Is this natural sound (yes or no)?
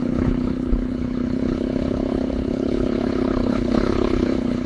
no